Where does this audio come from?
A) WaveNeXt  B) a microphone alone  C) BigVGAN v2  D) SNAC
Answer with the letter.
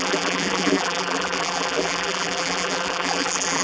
C